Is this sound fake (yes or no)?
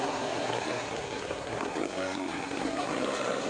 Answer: yes